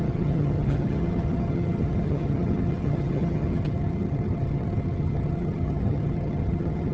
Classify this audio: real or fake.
fake